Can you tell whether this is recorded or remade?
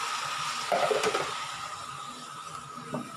recorded